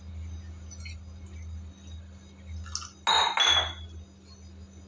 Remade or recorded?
recorded